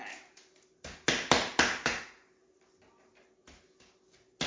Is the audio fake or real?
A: real